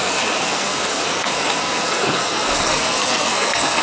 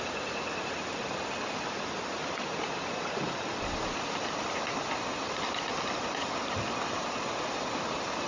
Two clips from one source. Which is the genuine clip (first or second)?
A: second